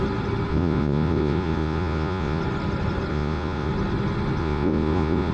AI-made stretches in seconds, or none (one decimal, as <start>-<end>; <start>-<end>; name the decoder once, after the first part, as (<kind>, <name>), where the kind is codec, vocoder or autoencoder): 0.5-2.4 (vocoder, Vocos); 3.1-3.7; 4.4-5.3